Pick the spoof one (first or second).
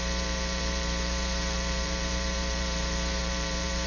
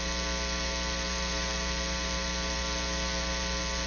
first